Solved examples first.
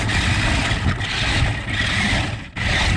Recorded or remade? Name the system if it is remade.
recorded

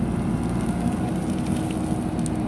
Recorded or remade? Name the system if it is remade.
recorded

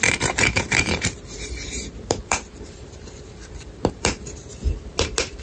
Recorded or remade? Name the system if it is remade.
remade, vocoder, BigVGAN v2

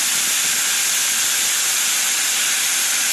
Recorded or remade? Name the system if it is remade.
remade, vocoder, BigVGAN v2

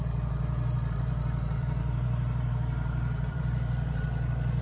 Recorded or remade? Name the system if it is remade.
remade, vocoder, BigVGAN v2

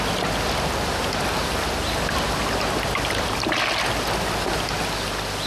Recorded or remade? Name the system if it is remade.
recorded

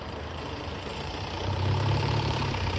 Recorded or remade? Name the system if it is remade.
remade, vocoder, BigVGAN v2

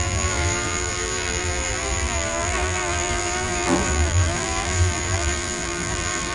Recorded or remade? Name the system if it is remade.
remade, vocoder, BigVGAN v2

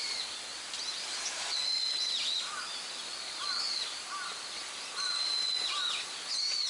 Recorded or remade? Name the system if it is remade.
recorded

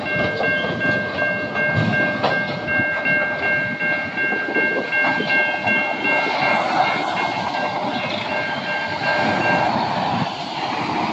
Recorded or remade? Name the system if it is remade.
recorded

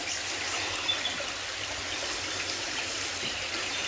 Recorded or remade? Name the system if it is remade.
recorded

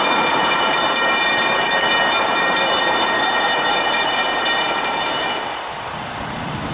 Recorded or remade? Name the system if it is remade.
remade, vocoder, BigVGAN v2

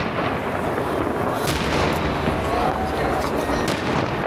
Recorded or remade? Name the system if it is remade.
recorded